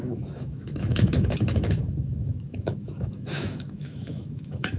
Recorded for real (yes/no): no